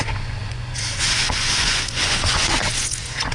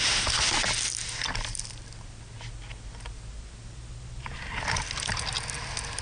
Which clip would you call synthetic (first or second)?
first